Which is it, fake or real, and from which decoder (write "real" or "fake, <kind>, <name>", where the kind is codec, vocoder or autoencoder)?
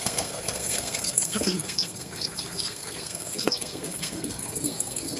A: fake, codec, SNAC